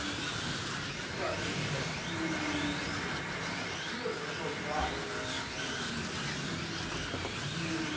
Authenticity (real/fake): real